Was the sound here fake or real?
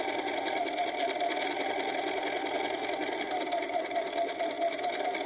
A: real